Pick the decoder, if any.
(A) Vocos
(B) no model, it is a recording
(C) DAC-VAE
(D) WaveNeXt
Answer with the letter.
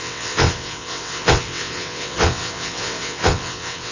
D